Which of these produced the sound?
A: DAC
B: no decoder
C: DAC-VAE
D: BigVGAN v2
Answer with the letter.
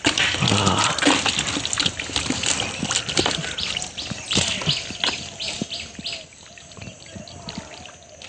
B